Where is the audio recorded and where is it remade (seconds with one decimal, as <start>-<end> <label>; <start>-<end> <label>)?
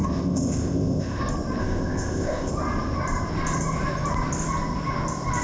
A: 0.0-1.2 remade; 1.2-1.6 recorded; 1.6-2.5 remade; 2.5-5.4 recorded